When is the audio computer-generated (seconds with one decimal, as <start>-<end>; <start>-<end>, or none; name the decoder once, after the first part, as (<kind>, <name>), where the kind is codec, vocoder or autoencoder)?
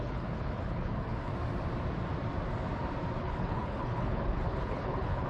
0.0-1.3 (codec, HILCodec); 3.2-5.3